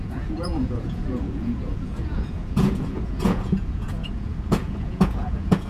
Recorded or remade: remade